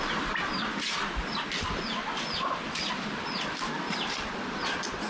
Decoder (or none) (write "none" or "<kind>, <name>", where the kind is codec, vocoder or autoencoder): none